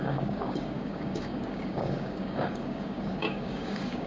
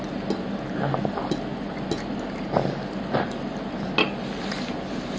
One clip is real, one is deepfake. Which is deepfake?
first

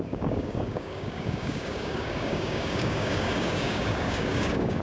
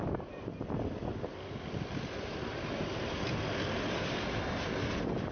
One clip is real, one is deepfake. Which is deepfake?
first